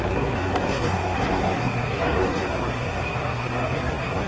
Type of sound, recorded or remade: remade